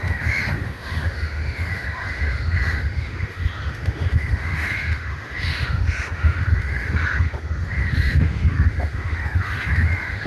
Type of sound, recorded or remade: remade